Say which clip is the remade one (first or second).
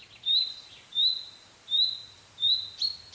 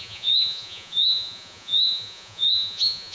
second